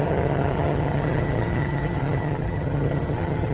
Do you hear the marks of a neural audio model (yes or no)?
yes